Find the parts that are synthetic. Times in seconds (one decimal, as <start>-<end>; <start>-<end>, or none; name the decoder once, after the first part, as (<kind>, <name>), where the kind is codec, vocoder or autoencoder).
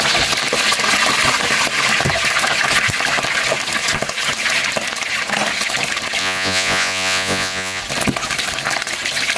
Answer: 6.2-7.8 (vocoder, Vocos)